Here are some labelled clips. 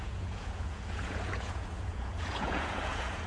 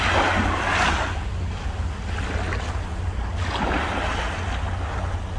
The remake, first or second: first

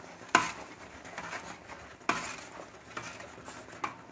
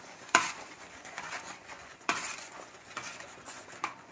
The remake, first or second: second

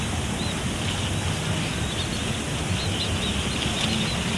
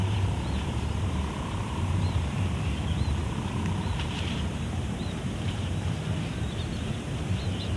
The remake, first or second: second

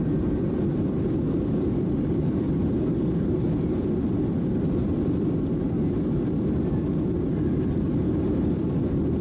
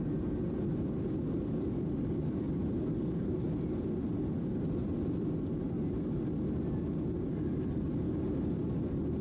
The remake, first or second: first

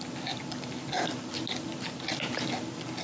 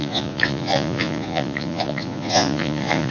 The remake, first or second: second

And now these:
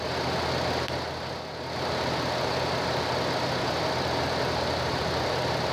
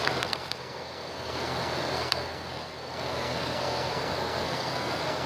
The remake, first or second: second